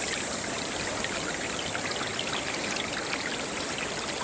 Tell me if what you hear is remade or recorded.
recorded